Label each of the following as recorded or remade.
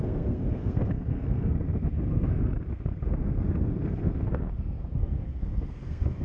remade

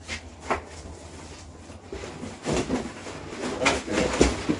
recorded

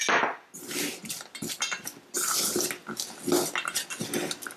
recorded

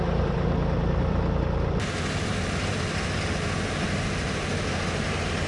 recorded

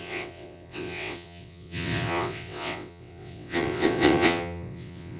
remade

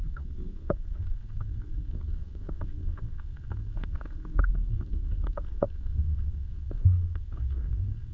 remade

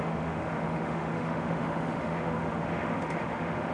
remade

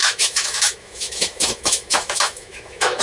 remade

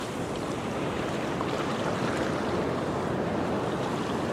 recorded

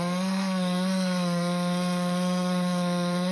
remade